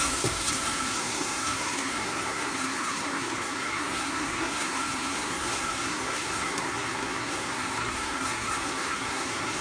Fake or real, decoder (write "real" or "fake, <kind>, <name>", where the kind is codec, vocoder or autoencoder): fake, codec, SNAC